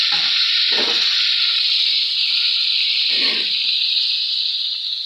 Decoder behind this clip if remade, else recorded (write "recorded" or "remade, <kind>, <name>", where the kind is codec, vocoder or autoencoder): recorded